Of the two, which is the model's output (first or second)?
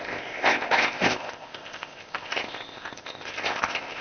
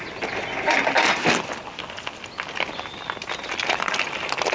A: first